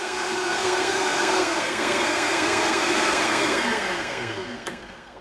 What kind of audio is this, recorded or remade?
remade